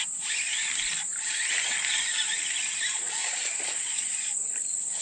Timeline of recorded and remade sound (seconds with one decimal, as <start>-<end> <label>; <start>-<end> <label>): 0.0-2.9 recorded; 2.9-4.5 remade; 4.5-5.0 recorded